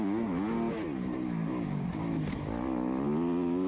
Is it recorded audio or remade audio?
recorded